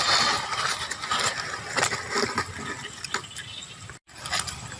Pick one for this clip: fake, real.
real